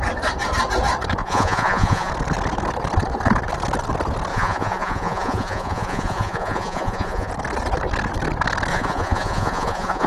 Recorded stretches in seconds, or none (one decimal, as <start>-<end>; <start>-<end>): 0.0-1.2; 2.1-4.3; 7.3-8.7